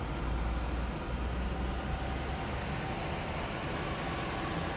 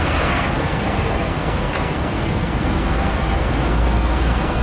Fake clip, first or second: second